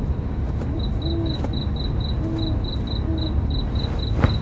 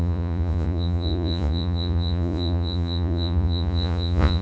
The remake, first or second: second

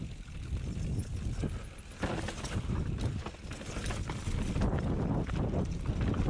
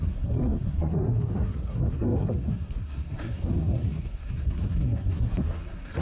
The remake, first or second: second